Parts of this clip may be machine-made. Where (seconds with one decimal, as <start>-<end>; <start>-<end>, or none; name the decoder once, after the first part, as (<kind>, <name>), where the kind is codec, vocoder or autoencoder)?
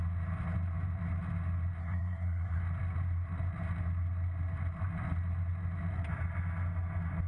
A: 1.8-2.6 (codec, SNAC)